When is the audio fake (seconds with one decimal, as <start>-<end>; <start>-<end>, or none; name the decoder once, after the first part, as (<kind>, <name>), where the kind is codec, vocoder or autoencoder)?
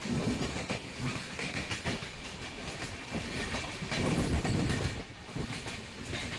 0.5-1.7 (codec, SNAC)